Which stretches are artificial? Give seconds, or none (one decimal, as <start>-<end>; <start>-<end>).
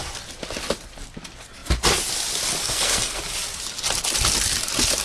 2.6-3.2